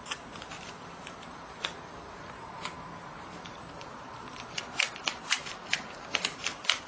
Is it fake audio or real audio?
fake